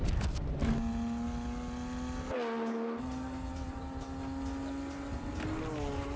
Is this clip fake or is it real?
real